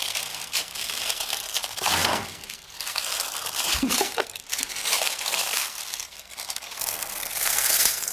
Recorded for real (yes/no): no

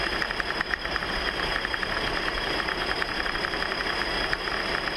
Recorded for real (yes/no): no